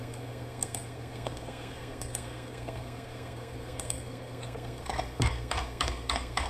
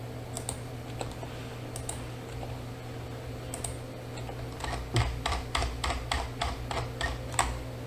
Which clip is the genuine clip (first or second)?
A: second